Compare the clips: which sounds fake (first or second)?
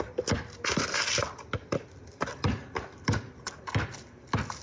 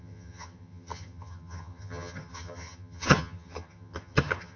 second